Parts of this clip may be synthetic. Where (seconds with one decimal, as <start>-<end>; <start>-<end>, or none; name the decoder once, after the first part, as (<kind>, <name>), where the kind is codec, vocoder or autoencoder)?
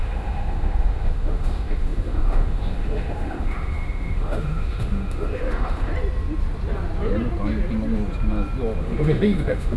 0.0-5.9 (autoencoder, DAC-VAE); 8.8-9.8